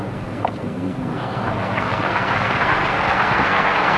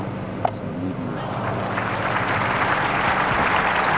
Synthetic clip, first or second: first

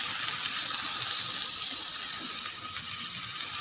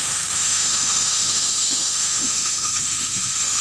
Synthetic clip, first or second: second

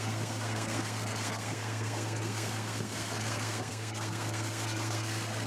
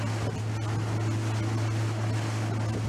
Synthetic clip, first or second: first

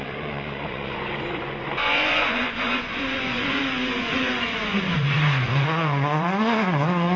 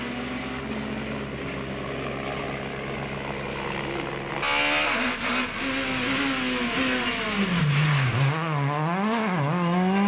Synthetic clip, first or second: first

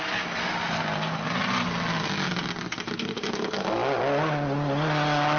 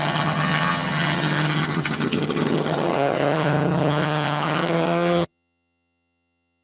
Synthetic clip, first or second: second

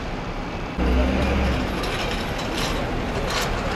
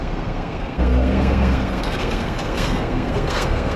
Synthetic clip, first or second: second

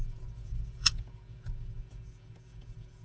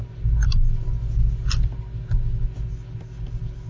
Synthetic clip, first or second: first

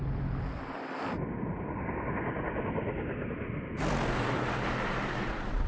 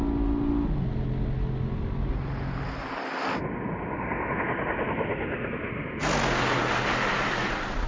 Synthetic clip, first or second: first